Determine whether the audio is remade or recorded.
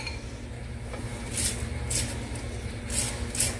recorded